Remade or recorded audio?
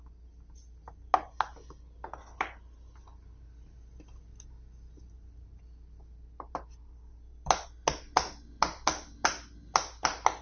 recorded